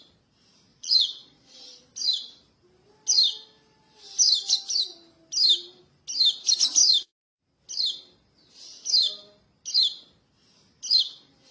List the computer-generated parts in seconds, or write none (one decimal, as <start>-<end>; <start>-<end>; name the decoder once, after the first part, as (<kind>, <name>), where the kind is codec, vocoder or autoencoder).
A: 0.7-1.8 (vocoder, Vocos)